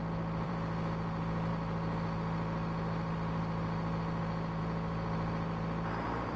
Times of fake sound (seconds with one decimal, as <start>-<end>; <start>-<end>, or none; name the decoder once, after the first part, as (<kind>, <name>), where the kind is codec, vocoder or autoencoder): 0.0-1.5 (vocoder, BigVGAN v2); 4.6-6.4